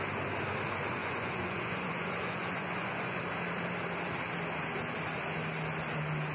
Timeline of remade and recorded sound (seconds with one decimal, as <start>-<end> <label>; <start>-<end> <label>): 0.0-1.0 recorded; 1.0-3.2 remade; 3.2-6.3 recorded